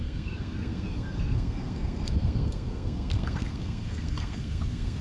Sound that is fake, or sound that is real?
fake